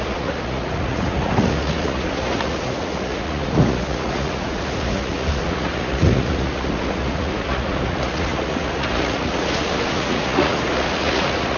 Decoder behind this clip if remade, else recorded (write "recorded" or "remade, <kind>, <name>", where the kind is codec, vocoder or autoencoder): remade, vocoder, Vocos